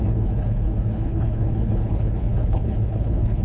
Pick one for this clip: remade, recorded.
remade